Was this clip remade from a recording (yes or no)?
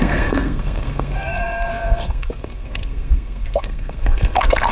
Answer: yes